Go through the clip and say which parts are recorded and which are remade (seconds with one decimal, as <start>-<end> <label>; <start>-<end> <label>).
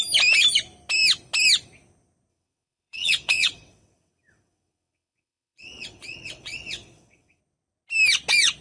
0.0-2.3 recorded; 2.3-7.4 remade; 7.4-8.6 recorded